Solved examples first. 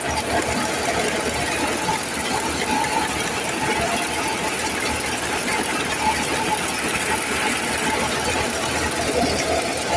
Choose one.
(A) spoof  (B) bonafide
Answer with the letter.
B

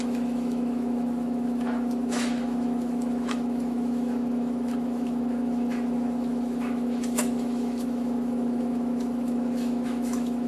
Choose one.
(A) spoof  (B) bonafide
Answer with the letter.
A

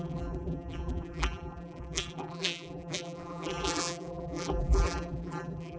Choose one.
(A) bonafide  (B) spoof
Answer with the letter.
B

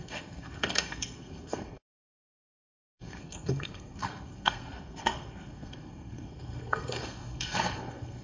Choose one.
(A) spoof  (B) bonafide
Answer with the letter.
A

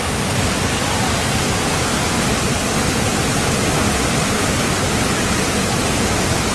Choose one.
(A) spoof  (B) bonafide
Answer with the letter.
B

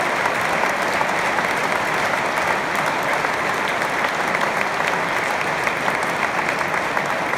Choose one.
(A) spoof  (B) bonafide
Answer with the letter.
B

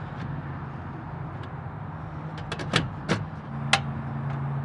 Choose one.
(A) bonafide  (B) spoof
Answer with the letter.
A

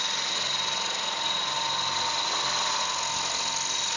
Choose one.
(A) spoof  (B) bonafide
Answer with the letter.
B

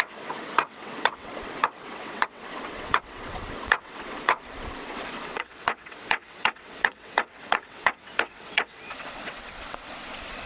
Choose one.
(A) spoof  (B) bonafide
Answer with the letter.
A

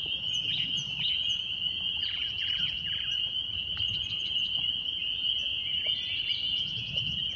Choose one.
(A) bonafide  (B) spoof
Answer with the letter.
A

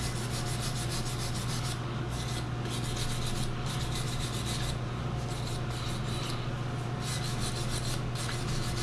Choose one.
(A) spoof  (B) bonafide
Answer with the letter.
B